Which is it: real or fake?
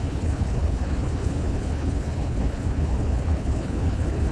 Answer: fake